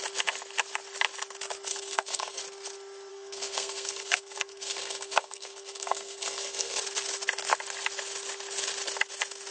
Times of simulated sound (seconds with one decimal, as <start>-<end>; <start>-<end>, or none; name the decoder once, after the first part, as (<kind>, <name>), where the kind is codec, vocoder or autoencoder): 1.7-2.4 (codec, SNAC); 3.1-6.8